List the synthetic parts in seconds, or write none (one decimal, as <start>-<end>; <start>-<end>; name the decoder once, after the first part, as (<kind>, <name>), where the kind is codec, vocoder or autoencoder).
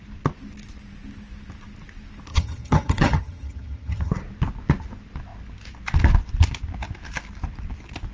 2.3-4.1 (vocoder, HiFi-GAN)